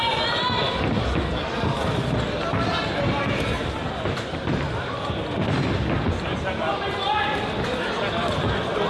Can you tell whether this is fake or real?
real